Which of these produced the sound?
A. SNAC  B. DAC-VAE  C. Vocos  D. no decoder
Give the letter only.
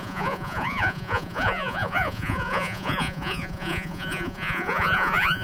C